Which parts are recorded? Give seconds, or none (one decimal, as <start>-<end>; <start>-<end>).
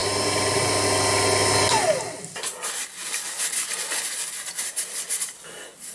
0.7-5.9